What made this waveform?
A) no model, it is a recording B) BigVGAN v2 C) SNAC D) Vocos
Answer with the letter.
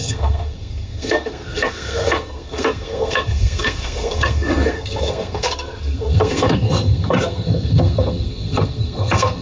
C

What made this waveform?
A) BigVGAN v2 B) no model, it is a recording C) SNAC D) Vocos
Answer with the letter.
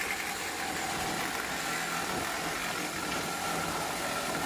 B